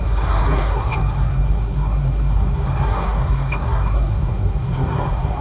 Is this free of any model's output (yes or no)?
no